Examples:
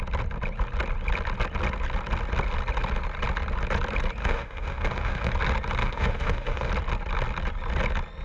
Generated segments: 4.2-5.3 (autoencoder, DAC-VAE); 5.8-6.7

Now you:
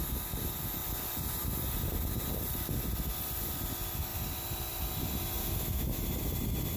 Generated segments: 5.4-6.0 (autoencoder, DAC-VAE)

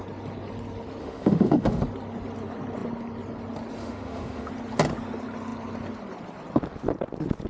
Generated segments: 1.0-1.8 (autoencoder, DAC-VAE); 3.8-4.5

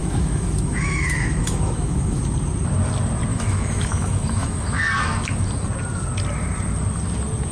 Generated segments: 0.0-2.2 (autoencoder, DAC-VAE); 3.3-4.8

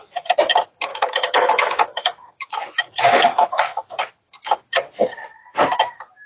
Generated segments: 0.9-4.0 (autoencoder, DAC-VAE)

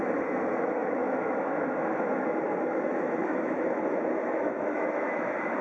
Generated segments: 0.0-5.6 (autoencoder, DAC-VAE)

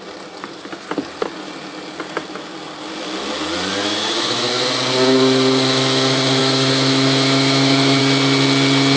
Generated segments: 3.8-4.5 (autoencoder, DAC-VAE); 6.4-8.0

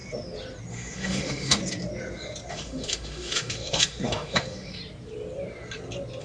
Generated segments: 0.7-1.6 (autoencoder, DAC-VAE); 2.5-4.8